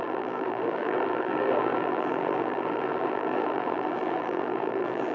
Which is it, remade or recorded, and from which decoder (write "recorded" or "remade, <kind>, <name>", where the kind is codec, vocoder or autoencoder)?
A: remade, vocoder, BigVGAN v2